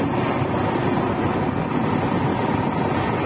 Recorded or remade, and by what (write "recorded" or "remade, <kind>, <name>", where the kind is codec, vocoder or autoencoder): recorded